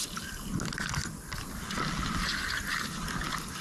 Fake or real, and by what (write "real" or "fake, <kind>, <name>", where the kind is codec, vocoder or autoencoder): real